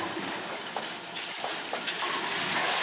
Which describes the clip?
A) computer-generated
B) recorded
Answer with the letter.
B